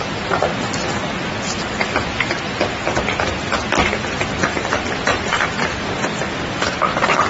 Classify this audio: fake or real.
real